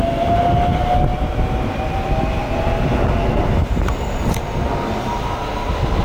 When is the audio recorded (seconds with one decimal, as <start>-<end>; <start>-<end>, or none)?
0.0-6.0